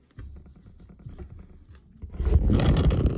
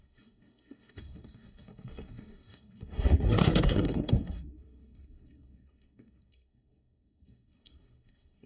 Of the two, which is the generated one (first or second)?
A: second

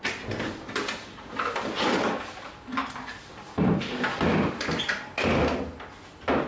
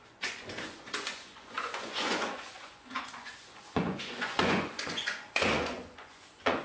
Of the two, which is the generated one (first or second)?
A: second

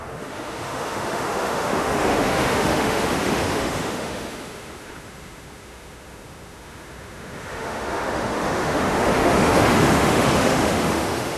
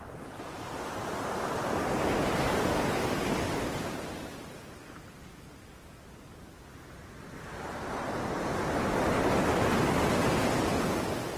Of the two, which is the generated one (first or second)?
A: first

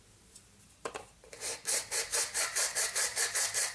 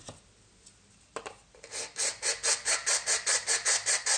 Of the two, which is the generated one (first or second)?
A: first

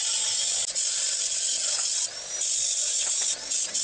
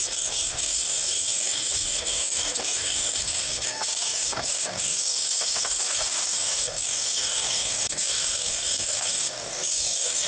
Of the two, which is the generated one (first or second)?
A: second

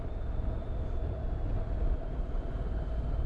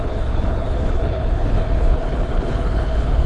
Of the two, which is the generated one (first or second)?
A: second